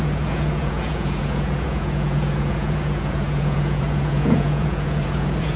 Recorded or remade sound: remade